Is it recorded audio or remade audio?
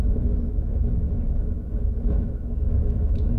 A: remade